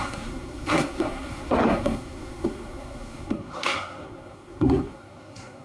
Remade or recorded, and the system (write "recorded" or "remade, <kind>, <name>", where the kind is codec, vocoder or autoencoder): remade, codec, SNAC